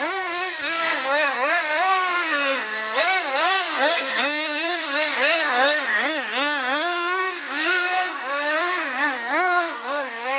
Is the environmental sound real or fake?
fake